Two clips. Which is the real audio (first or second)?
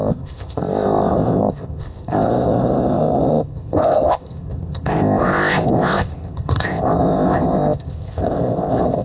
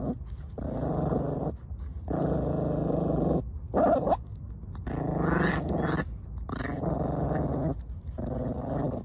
second